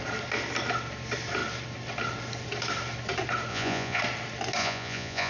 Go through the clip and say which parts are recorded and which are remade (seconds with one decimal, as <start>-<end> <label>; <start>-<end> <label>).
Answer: 0.0-3.5 recorded; 3.5-4.0 remade; 4.0-4.6 recorded; 4.6-5.3 remade